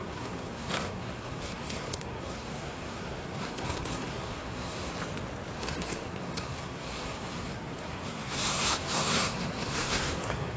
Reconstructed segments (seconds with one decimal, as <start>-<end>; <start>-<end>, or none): 0.0-4.9; 5.6-10.6